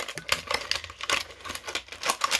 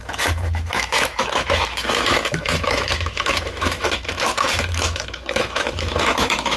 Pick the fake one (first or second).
second